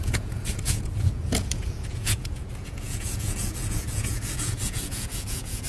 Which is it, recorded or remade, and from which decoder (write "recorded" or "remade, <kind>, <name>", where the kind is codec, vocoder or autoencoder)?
remade, vocoder, Vocos